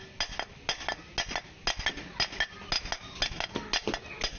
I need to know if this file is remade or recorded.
recorded